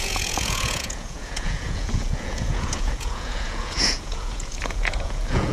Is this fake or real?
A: fake